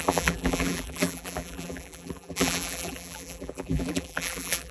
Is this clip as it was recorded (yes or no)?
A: no